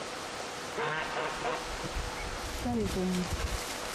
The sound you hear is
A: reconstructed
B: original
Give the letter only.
B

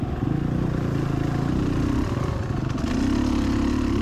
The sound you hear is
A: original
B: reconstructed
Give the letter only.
A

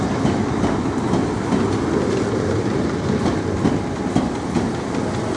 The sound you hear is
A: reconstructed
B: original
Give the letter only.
B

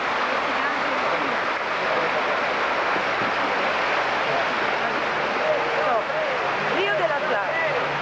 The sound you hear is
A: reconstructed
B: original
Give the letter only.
B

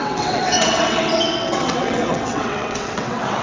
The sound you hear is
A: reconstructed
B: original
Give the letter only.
A